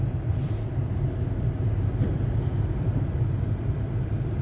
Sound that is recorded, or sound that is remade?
remade